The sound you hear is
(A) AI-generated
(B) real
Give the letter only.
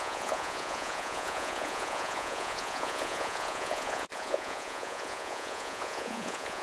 A